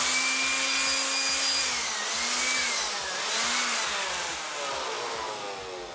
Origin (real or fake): real